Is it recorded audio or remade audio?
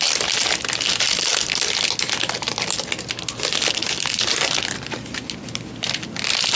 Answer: recorded